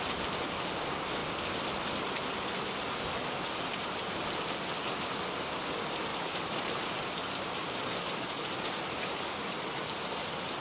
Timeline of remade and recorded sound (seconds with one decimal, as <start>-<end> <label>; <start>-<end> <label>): 0.0-3.7 recorded; 3.7-4.2 remade; 4.2-6.1 recorded; 6.1-9.5 remade; 9.5-10.6 recorded